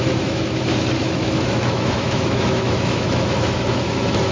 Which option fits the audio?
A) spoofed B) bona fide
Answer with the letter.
A